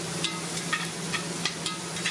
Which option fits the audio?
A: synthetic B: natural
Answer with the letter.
B